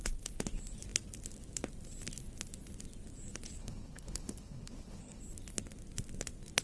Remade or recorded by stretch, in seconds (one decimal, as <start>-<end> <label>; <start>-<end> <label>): 0.0-3.6 recorded; 3.6-5.2 remade; 5.2-6.6 recorded